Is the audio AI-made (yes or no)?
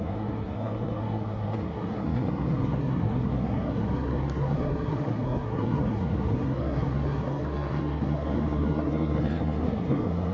yes